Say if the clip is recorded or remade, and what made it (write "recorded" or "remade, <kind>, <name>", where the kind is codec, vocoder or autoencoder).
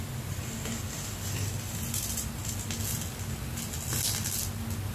recorded